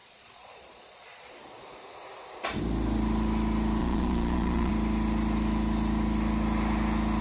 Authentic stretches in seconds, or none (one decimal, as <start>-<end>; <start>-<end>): 1.3-3.8; 4.7-7.2